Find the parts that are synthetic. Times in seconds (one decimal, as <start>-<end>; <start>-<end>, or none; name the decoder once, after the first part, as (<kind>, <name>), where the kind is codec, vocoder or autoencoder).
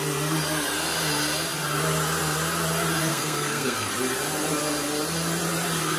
3.1-3.9 (codec, SNAC)